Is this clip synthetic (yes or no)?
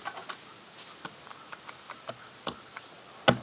no